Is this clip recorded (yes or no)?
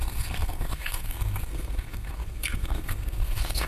no